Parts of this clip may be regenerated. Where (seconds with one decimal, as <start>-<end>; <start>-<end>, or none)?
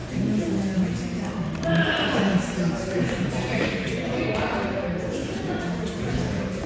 0.0-0.6; 2.3-3.3; 5.2-5.8